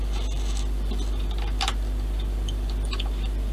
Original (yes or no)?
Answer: no